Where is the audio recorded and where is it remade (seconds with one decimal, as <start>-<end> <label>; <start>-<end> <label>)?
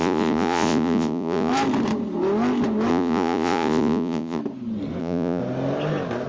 0.0-1.5 remade; 1.5-2.9 recorded; 2.9-4.4 remade; 4.4-5.0 recorded; 5.0-5.4 remade; 5.4-6.3 recorded